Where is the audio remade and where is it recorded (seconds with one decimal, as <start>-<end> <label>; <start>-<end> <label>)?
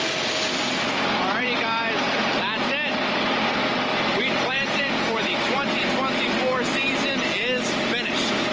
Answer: 0.0-3.9 recorded; 3.9-5.3 remade; 5.3-8.5 recorded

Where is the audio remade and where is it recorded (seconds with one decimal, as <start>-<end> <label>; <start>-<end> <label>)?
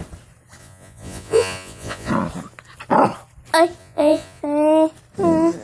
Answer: 0.0-0.6 recorded; 0.6-2.1 remade; 2.1-3.8 recorded; 3.8-4.4 remade; 4.4-5.6 recorded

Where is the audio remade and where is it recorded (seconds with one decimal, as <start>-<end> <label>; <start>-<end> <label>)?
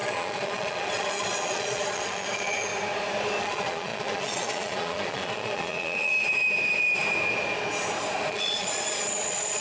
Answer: 0.0-2.7 remade; 2.7-3.4 recorded; 3.4-6.1 remade; 6.1-8.3 recorded; 8.3-9.6 remade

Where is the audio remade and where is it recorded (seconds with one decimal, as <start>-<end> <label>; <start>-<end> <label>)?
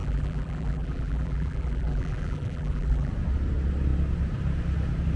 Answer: 0.0-3.1 remade; 3.1-5.2 recorded